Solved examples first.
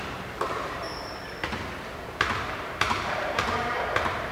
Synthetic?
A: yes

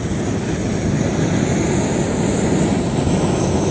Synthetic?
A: no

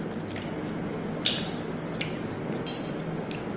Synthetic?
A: no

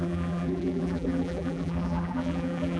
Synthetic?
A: yes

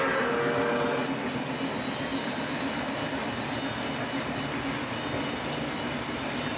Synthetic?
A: no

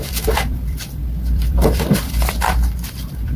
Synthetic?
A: yes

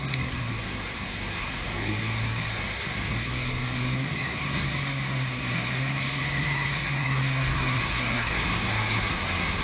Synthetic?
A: yes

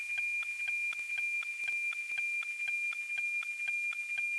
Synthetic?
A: no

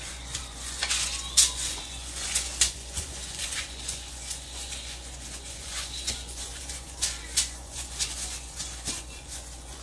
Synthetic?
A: yes